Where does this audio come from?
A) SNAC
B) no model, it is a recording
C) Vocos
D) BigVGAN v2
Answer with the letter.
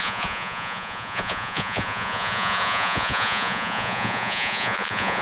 C